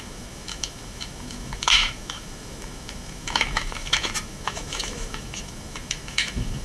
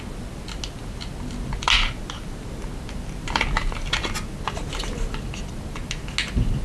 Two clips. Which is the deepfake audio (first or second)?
first